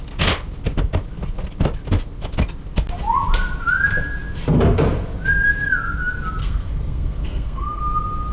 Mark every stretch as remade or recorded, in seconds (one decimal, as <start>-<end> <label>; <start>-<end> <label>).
0.0-6.4 recorded; 6.4-7.8 remade; 7.8-8.3 recorded